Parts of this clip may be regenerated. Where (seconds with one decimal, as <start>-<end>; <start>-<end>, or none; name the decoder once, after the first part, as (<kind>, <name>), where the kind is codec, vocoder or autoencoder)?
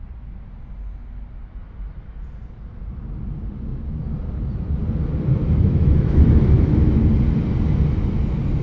5.4-7.1 (autoencoder, DAC-VAE)